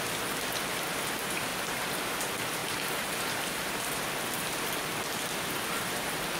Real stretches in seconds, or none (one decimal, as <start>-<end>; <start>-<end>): 0.0-2.6; 4.7-6.4